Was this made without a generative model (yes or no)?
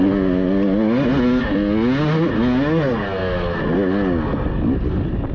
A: yes